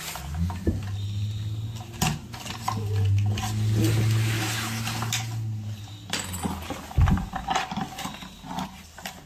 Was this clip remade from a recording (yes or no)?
no